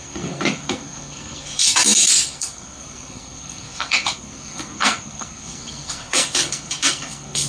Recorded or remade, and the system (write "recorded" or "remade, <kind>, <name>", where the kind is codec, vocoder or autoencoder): remade, codec, SNAC